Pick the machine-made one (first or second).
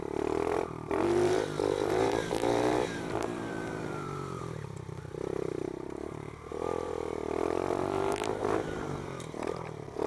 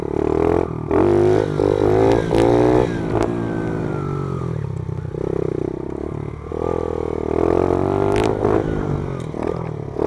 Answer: first